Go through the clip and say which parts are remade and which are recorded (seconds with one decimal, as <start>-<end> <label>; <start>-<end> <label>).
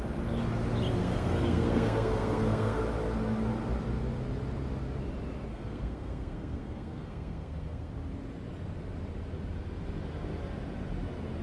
0.0-1.0 recorded; 1.0-2.8 remade; 2.8-5.5 recorded; 5.5-7.9 remade; 7.9-11.4 recorded